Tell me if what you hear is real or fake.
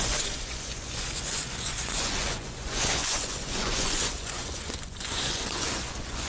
fake